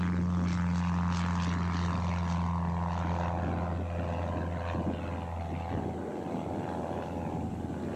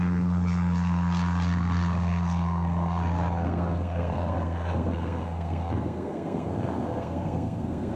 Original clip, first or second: first